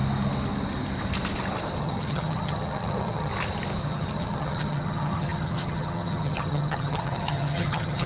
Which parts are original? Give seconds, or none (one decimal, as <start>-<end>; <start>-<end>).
0.0-1.8; 3.3-3.8